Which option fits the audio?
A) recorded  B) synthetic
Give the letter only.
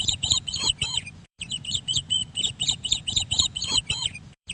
B